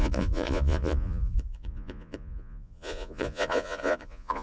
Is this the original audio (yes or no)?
no